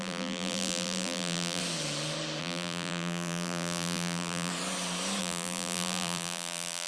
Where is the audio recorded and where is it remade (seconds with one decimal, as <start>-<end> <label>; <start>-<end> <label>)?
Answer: 0.0-1.6 remade; 1.6-2.4 recorded; 2.4-4.5 remade; 4.5-5.2 recorded; 5.2-6.9 remade